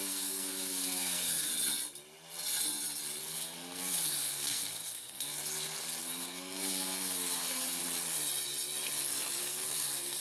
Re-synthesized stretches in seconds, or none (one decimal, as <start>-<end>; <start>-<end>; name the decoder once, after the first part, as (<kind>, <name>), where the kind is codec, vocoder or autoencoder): 0.0-1.5 (codec, SNAC); 3.2-5.4; 6.0-7.8; 9.4-10.2